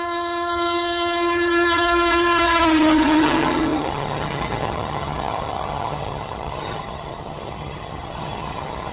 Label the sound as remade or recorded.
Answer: remade